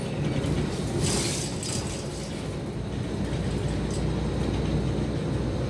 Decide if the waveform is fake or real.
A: real